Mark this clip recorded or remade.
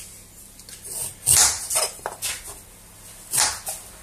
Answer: recorded